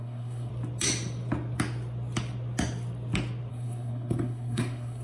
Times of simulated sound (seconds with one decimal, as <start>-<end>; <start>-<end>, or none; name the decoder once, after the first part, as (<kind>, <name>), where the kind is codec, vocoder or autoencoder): 0.0-0.5 (codec, SNAC); 3.5-5.0